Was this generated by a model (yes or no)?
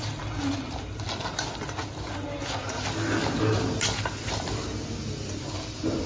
no